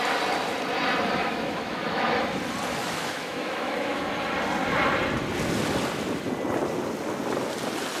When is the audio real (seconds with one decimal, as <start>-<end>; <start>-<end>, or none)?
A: 0.0-1.2; 2.1-2.8; 4.0-8.0